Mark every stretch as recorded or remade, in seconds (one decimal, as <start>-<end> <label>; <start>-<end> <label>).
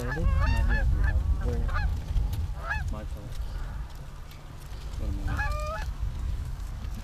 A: 0.0-0.5 recorded; 0.5-1.1 remade; 1.1-5.2 recorded; 5.2-7.0 remade